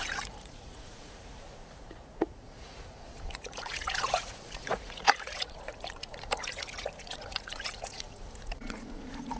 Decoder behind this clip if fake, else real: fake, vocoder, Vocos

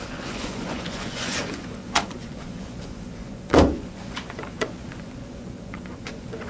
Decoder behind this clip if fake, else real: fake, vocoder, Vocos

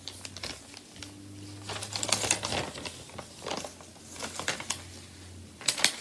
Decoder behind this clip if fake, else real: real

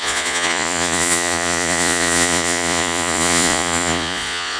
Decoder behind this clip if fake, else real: fake, vocoder, Vocos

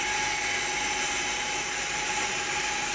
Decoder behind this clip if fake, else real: real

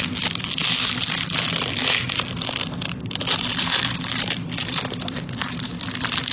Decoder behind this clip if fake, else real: real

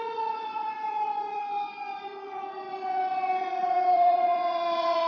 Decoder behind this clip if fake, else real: fake, vocoder, Vocos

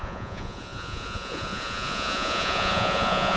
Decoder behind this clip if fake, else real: fake, vocoder, Vocos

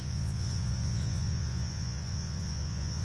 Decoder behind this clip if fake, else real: fake, vocoder, Vocos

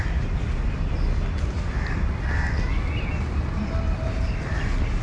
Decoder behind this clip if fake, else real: real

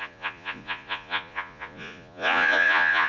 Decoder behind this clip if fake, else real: fake, vocoder, Vocos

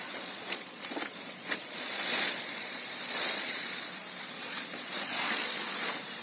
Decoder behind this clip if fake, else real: fake, vocoder, Vocos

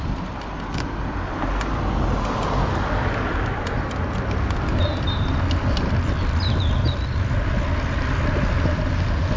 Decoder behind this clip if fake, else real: real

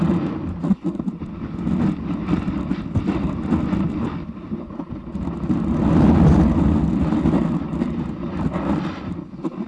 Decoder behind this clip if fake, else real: real